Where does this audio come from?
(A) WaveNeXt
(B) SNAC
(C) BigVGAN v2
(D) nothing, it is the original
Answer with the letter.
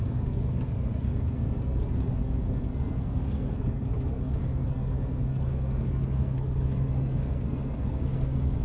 B